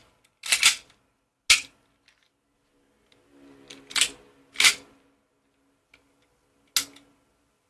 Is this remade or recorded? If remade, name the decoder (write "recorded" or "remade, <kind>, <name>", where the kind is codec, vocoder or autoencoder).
recorded